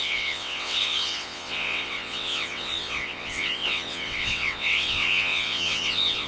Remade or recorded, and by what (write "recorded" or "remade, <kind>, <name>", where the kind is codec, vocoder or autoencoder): remade, vocoder, WaveNeXt